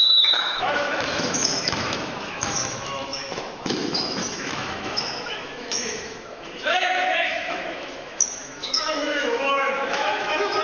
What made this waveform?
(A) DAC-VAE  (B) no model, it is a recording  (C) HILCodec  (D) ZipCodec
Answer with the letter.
A